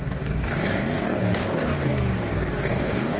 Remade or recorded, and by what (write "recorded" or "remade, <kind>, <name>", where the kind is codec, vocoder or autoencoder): remade, codec, DAC